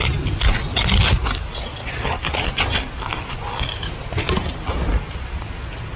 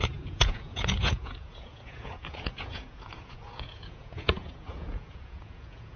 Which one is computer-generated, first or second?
second